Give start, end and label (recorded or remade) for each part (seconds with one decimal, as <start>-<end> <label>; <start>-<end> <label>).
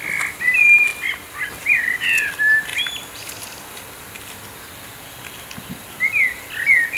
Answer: 0.0-2.7 recorded; 2.7-3.7 remade; 3.7-7.0 recorded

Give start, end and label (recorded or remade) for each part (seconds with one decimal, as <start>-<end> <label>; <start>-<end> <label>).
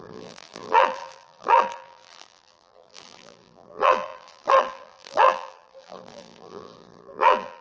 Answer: 0.0-7.6 remade